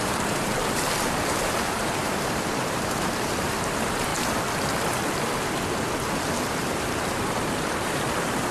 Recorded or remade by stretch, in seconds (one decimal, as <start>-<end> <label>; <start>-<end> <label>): 0.0-4.1 remade; 4.1-6.4 recorded; 6.4-8.5 remade